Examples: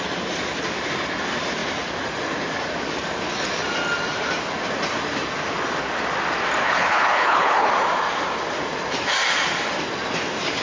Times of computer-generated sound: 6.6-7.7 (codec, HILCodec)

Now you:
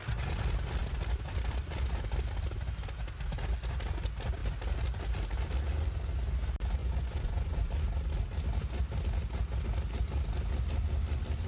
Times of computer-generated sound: 6.8-7.7 (vocoder, Vocos)

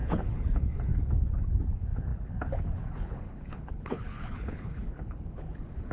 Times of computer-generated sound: 0.0-5.9 (codec, HILCodec)

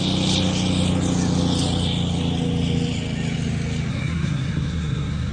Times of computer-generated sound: 3.9-5.3 (codec, SNAC)

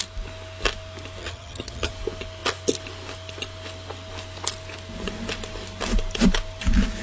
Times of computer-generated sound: 1.2-1.9 (vocoder, HiFi-GAN)